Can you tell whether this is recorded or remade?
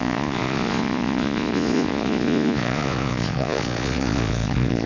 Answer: remade